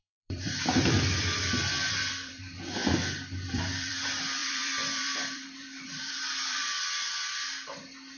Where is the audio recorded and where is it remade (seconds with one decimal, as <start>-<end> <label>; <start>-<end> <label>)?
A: 0.0-2.8 remade; 2.8-3.5 recorded; 3.5-7.1 remade; 7.1-8.2 recorded